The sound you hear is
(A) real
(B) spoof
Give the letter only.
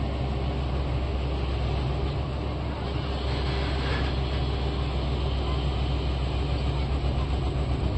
A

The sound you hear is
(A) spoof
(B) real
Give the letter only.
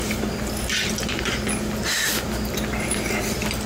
B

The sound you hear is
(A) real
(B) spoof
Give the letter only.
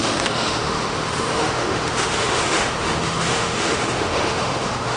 B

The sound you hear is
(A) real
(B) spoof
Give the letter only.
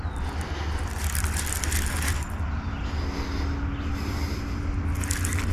A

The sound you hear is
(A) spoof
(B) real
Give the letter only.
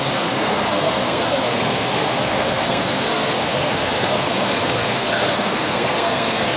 A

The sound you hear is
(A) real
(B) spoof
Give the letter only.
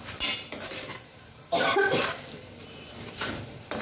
B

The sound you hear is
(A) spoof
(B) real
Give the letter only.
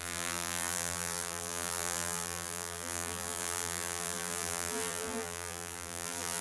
A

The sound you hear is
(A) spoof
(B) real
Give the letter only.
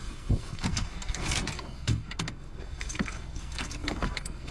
A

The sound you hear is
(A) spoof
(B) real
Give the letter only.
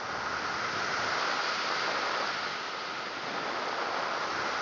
B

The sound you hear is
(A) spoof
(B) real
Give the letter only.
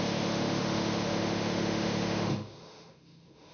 A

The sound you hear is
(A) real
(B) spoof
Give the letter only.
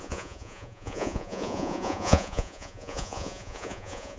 B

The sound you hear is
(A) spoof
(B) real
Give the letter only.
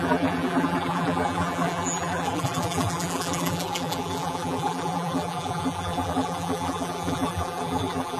A